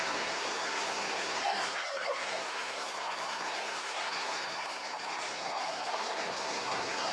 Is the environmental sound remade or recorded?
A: remade